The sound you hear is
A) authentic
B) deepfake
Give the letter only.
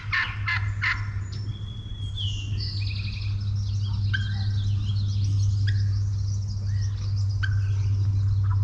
A